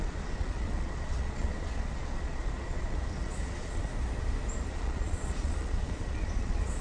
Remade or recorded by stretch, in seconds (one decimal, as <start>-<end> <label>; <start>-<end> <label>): 0.0-3.9 remade; 3.9-4.7 recorded; 4.7-6.8 remade